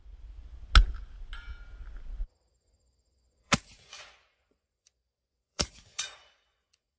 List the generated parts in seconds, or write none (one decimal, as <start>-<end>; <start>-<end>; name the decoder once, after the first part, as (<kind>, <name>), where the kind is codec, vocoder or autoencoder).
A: 2.5-7.0 (vocoder, Vocos)